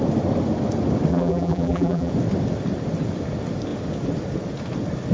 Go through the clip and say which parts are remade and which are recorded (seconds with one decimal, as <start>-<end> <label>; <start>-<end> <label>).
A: 0.0-1.1 recorded; 1.1-2.1 remade; 2.1-5.1 recorded